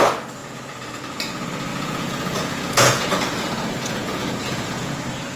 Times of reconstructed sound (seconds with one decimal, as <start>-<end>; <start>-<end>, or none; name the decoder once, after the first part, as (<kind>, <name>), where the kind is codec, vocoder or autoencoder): 0.4-1.0 (vocoder, Vocos); 1.7-4.9